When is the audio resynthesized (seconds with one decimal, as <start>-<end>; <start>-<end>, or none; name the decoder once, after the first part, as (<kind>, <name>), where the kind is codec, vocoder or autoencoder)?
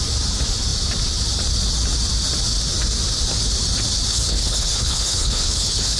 4.1-6.0 (codec, HILCodec)